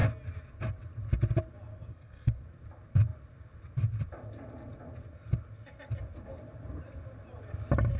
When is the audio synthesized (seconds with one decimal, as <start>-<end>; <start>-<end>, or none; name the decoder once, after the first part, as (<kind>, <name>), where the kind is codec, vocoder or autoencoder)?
1.9-2.4 (codec, SNAC)